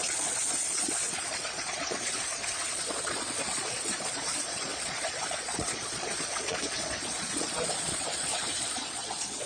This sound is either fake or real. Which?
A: fake